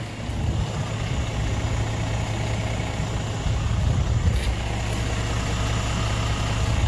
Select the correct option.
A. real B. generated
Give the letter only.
A